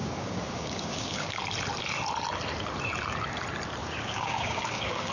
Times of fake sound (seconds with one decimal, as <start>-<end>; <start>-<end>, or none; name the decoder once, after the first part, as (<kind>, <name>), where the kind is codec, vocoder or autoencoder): 0.0-1.4 (codec, DAC); 3.8-5.1